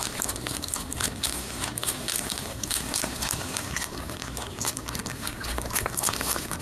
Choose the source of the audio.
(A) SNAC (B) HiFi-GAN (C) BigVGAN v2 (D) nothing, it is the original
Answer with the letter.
A